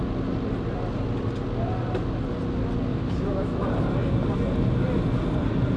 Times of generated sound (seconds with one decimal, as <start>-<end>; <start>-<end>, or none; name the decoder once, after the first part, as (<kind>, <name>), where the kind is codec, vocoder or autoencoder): 2.9-3.7 (autoencoder, DAC-VAE)